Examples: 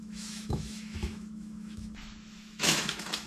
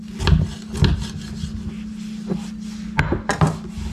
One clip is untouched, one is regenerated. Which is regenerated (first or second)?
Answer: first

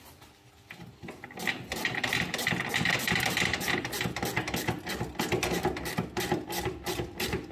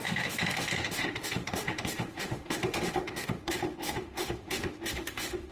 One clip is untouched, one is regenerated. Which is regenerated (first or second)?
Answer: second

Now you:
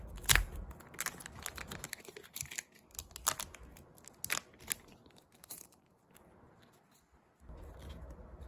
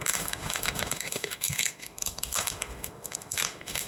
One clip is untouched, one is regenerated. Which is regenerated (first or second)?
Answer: second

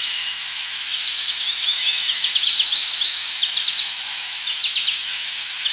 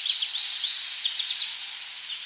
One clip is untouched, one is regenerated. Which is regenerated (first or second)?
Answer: first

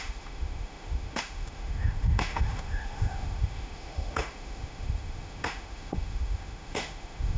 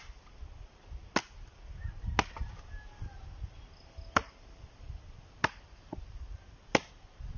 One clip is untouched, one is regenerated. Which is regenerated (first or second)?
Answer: first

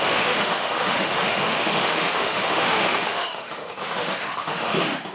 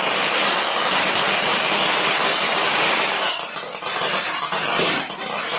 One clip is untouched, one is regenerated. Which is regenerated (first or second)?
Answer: first